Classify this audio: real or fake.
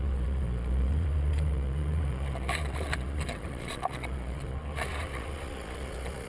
fake